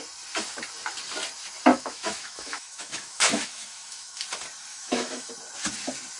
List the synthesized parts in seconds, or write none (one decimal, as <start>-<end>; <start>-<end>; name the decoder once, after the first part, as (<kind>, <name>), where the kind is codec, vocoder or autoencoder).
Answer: 1.7-4.2 (autoencoder, DAC-VAE); 4.7-5.3